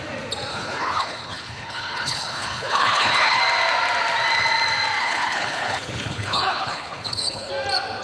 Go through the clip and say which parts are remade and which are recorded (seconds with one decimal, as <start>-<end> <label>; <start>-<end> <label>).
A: 0.0-0.5 recorded; 0.5-3.4 remade; 3.4-5.0 recorded; 5.0-7.5 remade; 7.5-8.0 recorded

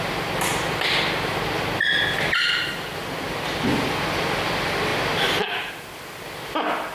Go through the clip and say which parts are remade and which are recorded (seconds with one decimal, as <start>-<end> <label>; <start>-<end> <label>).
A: 0.0-6.9 recorded

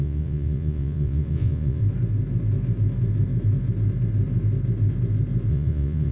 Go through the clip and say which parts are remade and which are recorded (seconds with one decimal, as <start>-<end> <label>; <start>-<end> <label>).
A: 0.0-1.8 remade; 1.8-5.5 recorded; 5.5-6.1 remade